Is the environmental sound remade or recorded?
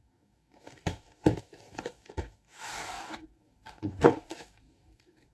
remade